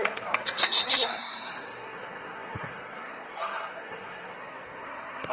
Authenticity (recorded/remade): remade